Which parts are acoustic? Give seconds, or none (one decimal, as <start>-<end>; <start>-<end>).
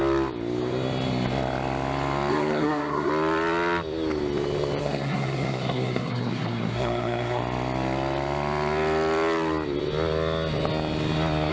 0.0-2.3; 3.1-4.8; 7.4-11.5